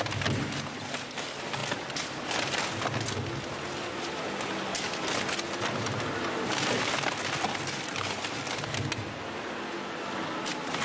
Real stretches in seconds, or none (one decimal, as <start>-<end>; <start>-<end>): 0.0-10.8